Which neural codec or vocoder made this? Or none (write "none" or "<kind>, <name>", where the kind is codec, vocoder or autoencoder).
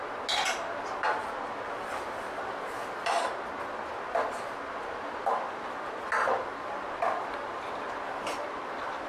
none